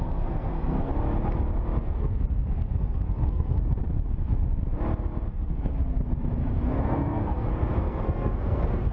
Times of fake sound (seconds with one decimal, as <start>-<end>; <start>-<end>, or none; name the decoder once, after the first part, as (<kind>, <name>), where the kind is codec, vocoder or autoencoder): 0.0-0.9 (codec, SNAC); 1.8-3.8; 5.3-5.7; 6.6-8.9